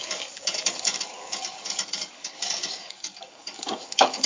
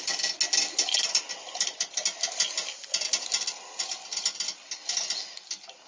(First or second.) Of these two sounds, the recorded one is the second